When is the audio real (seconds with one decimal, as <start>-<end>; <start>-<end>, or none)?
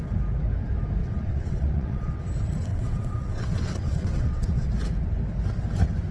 0.0-1.0; 2.2-2.7; 4.7-6.1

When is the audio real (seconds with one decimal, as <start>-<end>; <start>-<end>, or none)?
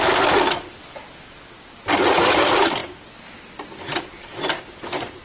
0.0-5.2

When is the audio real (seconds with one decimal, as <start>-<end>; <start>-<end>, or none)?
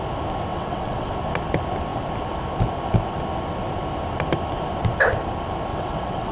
0.0-0.5; 1.1-5.7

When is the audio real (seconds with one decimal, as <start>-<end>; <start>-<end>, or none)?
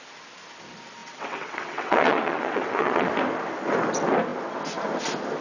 0.0-1.0; 3.1-5.4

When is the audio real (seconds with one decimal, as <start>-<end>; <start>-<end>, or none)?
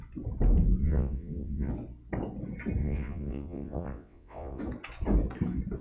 0.0-0.8; 1.7-2.8; 4.6-5.8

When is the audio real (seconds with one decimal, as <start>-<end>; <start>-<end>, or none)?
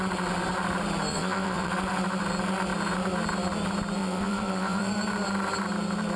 0.0-1.1; 1.7-4.0; 4.9-6.2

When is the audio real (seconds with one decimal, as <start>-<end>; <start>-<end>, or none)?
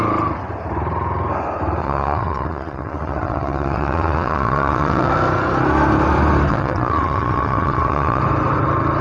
0.0-1.8; 5.1-6.5; 8.2-9.0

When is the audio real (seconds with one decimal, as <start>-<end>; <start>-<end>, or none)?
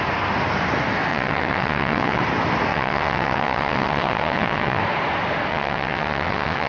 0.0-1.1; 2.2-2.7; 4.8-5.5